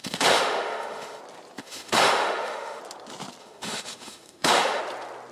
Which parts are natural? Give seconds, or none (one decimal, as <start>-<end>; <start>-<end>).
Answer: 1.2-1.6; 2.8-3.4; 4.8-5.3